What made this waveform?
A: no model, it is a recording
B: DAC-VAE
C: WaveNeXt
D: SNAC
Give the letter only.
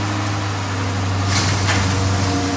A